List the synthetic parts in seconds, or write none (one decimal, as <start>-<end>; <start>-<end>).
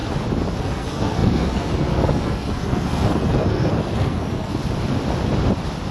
0.6-4.6